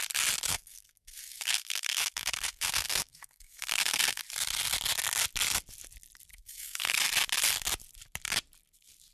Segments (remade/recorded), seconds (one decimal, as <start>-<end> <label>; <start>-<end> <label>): 0.0-0.5 recorded; 0.5-4.2 remade; 4.2-6.3 recorded; 6.3-7.0 remade; 7.0-9.1 recorded